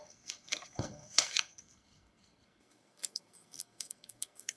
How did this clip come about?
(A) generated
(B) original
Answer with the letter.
A